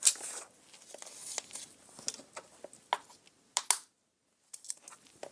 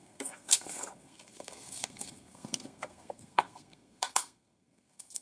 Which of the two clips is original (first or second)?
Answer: first